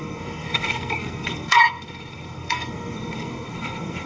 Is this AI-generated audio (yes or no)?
yes